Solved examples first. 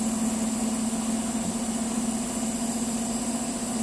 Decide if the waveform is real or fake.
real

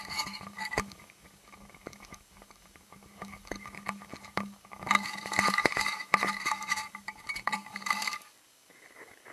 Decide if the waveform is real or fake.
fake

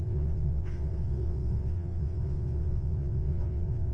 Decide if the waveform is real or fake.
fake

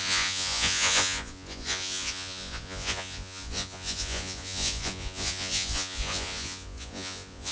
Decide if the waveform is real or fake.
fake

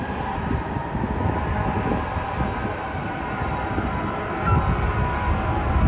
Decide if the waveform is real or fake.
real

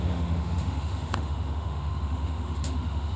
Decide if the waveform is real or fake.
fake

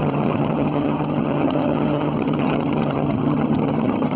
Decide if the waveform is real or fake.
fake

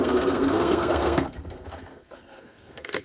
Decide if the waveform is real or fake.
fake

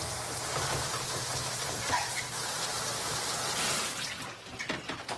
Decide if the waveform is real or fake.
fake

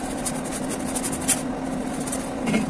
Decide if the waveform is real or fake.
real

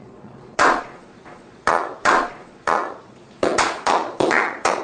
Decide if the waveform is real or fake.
fake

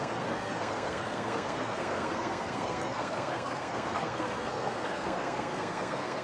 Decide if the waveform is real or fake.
fake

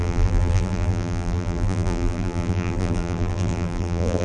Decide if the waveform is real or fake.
fake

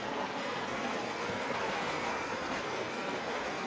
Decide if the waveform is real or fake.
fake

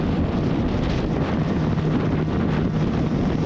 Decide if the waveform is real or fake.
real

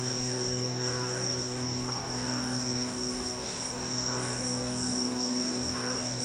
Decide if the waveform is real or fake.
fake